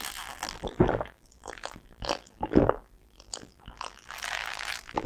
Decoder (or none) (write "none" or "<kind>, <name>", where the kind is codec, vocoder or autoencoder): vocoder, BigVGAN v2